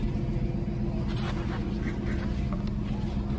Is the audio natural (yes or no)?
yes